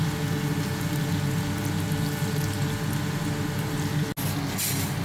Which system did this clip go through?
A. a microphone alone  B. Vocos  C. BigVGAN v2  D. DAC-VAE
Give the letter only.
A